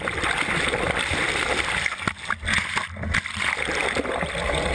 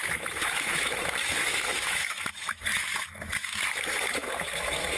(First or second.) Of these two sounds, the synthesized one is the second